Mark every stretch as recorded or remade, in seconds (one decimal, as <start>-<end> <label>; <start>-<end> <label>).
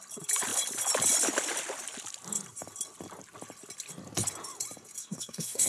0.0-5.0 recorded; 5.0-5.7 remade